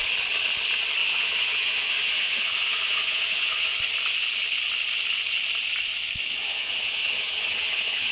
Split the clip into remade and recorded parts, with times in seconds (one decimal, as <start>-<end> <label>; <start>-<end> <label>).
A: 0.0-1.0 recorded; 1.0-3.8 remade; 3.8-6.4 recorded; 6.4-8.1 remade